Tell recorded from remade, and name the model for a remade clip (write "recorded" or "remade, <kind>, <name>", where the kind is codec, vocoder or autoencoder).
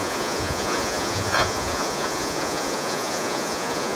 remade, vocoder, Vocos